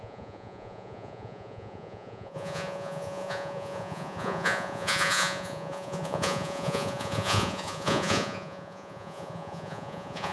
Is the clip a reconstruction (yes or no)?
yes